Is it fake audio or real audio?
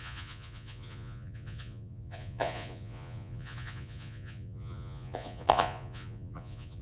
fake